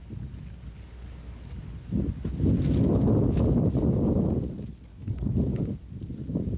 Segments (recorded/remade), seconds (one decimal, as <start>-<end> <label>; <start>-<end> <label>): 0.0-4.9 recorded; 4.9-5.6 remade; 5.6-6.6 recorded

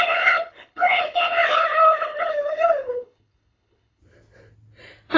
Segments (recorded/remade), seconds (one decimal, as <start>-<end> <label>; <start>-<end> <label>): 0.0-4.0 remade; 4.0-5.2 recorded

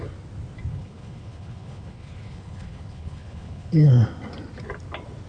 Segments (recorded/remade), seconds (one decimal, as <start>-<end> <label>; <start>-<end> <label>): 0.0-0.7 recorded; 0.7-3.9 remade; 3.9-5.3 recorded

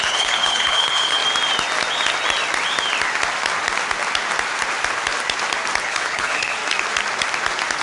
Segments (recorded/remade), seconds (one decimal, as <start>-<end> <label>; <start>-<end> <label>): 0.0-1.2 remade; 1.2-5.8 recorded; 5.8-6.6 remade; 6.6-7.8 recorded

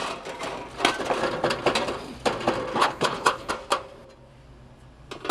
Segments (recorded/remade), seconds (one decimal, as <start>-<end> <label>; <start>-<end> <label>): 0.0-2.7 recorded; 2.7-3.5 remade; 3.5-5.3 recorded

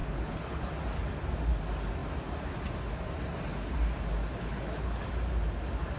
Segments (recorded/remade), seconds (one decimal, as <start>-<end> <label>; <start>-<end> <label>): 0.0-0.7 remade; 0.7-4.4 recorded; 4.4-5.1 remade; 5.1-6.0 recorded

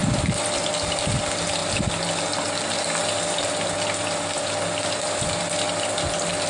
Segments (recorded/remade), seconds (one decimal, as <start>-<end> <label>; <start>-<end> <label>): 0.0-6.5 recorded

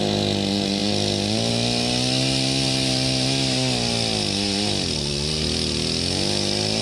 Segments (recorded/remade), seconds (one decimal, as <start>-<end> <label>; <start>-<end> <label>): 0.0-6.8 recorded